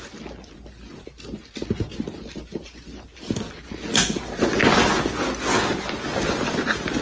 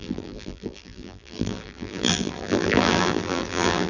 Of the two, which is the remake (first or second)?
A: second